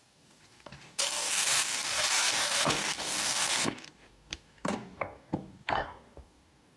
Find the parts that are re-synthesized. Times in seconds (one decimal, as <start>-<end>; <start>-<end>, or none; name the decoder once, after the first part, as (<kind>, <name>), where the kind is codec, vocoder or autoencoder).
0.0-6.8 (codec, DAC)